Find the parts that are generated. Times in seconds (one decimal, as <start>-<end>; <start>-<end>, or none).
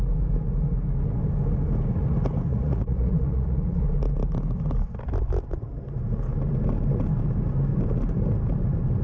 2.5-3.8